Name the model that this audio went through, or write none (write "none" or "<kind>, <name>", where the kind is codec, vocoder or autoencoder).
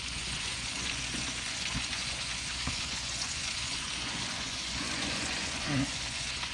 vocoder, Vocos